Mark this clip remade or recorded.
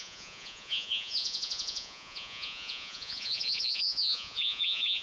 remade